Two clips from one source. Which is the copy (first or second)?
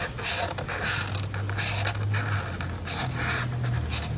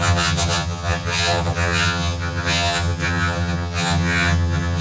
second